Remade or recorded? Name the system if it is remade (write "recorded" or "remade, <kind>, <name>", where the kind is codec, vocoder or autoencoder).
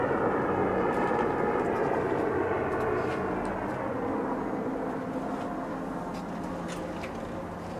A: recorded